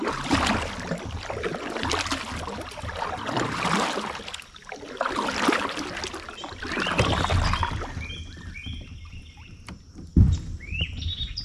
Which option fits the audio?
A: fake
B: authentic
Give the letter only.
B